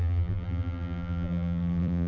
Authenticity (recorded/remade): remade